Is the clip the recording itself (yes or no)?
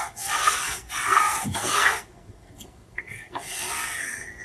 no